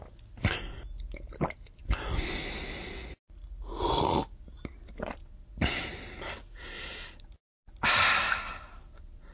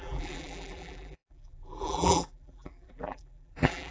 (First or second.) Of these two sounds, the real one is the first